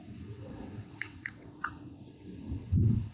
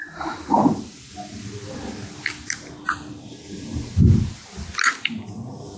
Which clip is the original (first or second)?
second